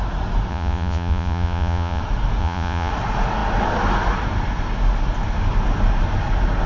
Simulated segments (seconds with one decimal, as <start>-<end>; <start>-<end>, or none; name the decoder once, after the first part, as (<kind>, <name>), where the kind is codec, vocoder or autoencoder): 0.5-2.0 (vocoder, Vocos); 2.4-2.9